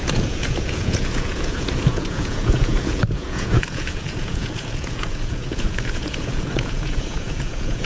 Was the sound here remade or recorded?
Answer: remade